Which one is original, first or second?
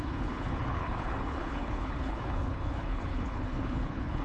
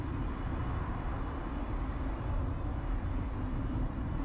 second